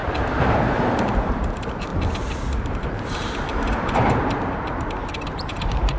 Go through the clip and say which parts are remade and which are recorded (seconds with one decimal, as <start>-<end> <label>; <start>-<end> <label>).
0.0-1.9 remade; 1.9-2.9 recorded; 2.9-6.0 remade